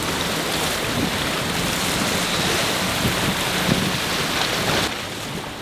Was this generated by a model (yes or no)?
no